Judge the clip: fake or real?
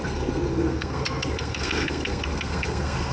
fake